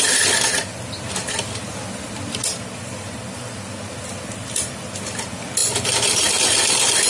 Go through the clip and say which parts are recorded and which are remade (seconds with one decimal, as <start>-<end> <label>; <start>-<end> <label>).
0.0-7.1 recorded